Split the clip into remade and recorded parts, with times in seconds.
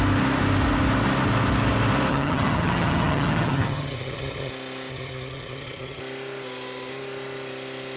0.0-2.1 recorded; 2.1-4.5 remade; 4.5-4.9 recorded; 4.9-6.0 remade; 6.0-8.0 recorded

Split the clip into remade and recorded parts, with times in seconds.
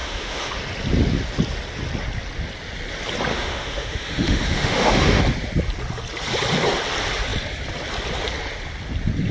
0.0-0.6 remade; 0.6-3.3 recorded; 3.3-5.2 remade; 5.2-9.3 recorded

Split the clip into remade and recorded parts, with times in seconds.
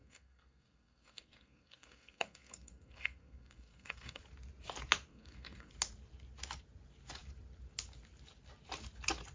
0.0-4.2 remade; 4.2-5.1 recorded; 5.1-5.7 remade; 5.7-9.3 recorded